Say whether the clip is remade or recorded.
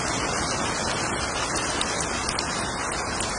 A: recorded